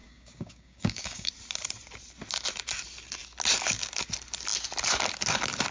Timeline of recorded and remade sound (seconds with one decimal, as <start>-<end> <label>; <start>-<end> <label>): 0.0-1.3 remade; 1.3-5.7 recorded